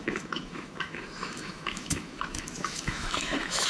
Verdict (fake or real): fake